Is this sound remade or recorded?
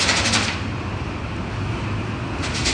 recorded